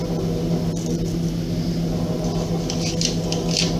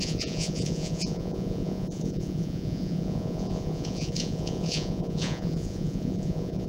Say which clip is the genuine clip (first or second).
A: first